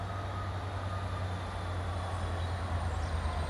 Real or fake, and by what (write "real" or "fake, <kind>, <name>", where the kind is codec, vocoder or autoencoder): real